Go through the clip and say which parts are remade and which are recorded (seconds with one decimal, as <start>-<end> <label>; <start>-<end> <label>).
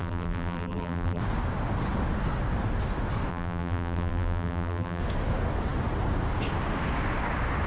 0.0-1.2 remade; 1.2-3.3 recorded; 3.3-5.0 remade; 5.0-7.7 recorded